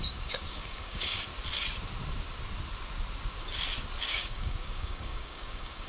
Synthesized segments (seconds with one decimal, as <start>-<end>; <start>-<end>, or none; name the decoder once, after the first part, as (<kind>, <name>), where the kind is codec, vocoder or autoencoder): 0.0-1.3 (codec, DAC); 4.1-5.9